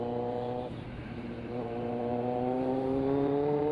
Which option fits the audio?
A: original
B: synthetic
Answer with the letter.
B